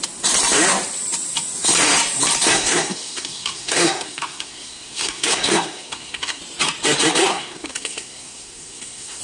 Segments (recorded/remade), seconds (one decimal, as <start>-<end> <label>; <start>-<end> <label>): 0.0-2.5 recorded; 2.5-6.4 remade; 6.4-7.3 recorded; 7.3-9.2 remade